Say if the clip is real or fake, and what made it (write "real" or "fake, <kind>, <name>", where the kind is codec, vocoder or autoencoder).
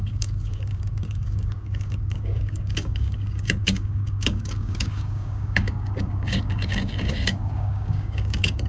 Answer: fake, codec, DAC